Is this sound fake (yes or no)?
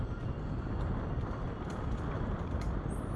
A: no